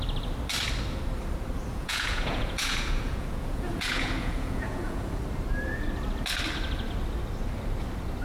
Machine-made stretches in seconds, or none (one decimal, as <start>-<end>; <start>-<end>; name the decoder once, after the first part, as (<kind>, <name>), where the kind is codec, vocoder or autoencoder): 1.7-5.2 (vocoder, Vocos)